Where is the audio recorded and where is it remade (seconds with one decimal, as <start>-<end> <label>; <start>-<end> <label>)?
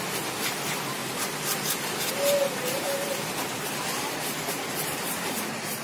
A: 0.0-1.0 remade; 1.0-2.1 recorded; 2.1-5.8 remade